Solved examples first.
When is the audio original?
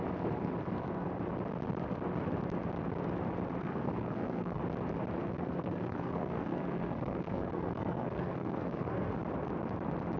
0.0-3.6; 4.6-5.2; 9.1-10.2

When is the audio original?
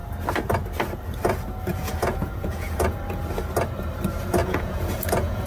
0.0-1.7; 3.0-4.4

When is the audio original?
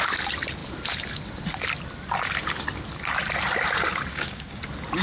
0.0-4.1; 4.6-5.0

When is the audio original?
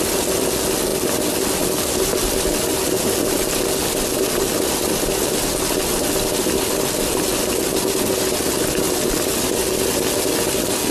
0.0-10.9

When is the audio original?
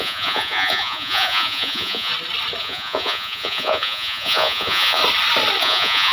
2.1-2.6; 5.0-5.6